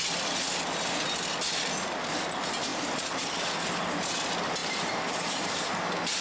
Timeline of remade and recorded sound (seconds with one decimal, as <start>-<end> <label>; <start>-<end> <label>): 0.0-2.7 recorded; 2.7-3.6 remade; 3.6-4.6 recorded; 4.6-5.7 remade; 5.7-6.2 recorded